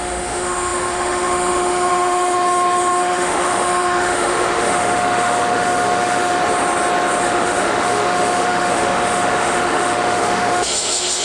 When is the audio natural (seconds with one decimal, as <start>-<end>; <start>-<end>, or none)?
6.4-7.2

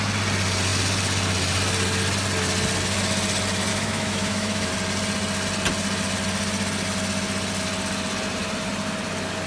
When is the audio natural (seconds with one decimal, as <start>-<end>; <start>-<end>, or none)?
0.0-3.7; 4.7-9.5

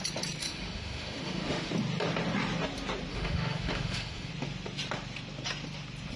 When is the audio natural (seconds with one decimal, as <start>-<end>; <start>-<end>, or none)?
0.0-0.4; 1.7-3.1; 4.3-6.2